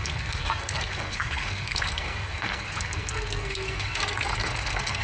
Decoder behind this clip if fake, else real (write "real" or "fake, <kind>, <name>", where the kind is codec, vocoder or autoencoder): fake, codec, SNAC